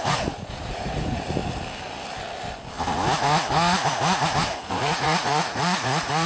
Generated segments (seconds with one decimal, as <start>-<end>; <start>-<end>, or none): 0.0-1.4; 4.6-6.3